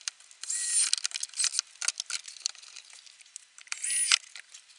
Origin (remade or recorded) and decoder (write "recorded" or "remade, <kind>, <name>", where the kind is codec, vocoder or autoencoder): recorded